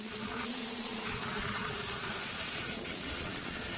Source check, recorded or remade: remade